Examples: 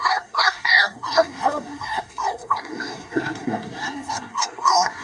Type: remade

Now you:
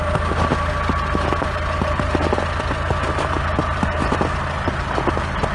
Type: recorded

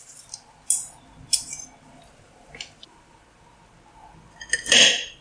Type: recorded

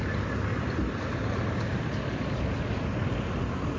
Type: recorded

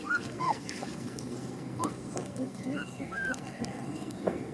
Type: remade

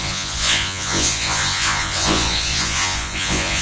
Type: remade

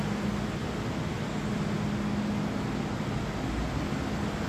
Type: recorded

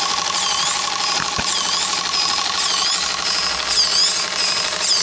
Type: recorded